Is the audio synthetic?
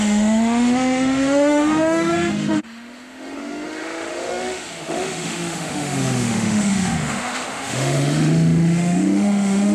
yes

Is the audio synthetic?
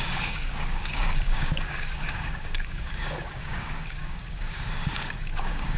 yes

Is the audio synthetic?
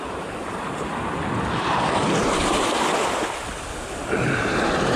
no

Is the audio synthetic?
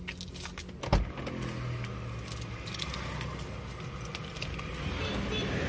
no